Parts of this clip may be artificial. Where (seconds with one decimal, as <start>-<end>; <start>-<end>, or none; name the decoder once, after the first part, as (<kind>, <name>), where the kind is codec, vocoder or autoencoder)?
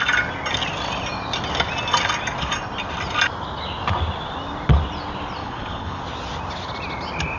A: 5.4-6.0 (codec, HILCodec)